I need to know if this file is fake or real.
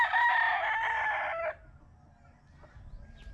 real